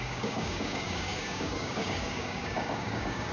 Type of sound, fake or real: fake